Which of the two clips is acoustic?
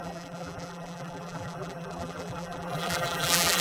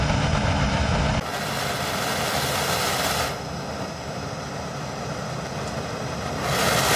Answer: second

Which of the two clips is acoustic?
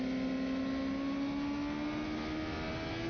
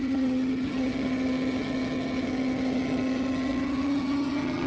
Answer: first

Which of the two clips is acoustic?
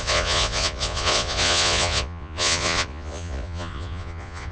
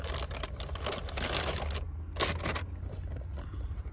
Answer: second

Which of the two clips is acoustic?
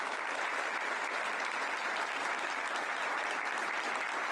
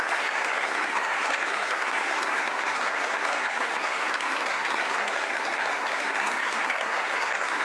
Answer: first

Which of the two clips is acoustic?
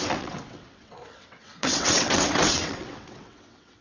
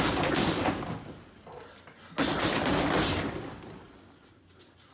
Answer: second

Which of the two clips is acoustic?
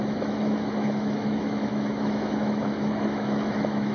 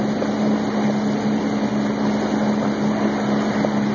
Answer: second